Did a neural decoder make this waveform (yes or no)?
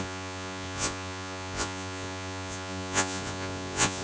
yes